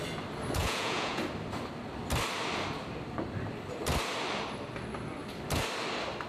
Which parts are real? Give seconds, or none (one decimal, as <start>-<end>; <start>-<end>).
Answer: 0.0-0.6; 1.2-6.3